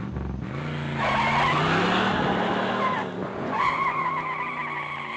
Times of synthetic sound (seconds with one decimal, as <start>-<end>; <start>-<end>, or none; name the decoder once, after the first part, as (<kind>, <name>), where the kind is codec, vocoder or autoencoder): 3.2-4.1 (vocoder, Vocos)